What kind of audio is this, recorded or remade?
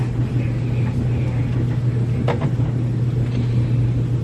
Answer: recorded